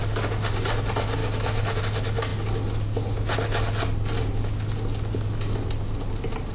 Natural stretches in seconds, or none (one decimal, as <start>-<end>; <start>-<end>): 0.0-1.2; 1.8-6.5